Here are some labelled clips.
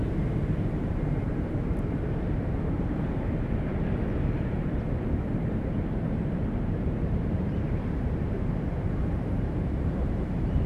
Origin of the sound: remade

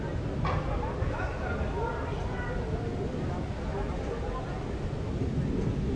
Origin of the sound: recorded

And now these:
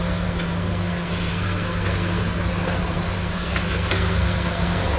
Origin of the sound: remade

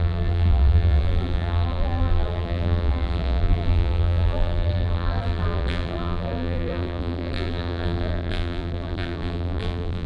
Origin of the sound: remade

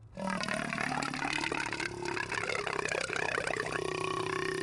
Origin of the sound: recorded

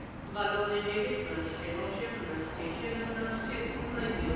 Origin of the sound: recorded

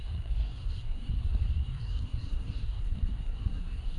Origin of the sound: remade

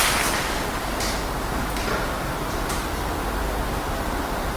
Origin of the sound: recorded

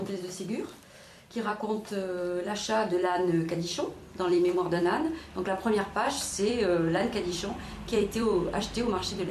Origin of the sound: remade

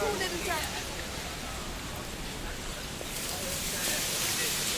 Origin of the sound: remade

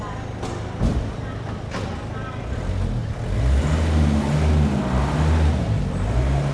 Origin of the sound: recorded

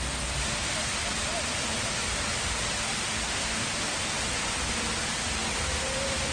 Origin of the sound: recorded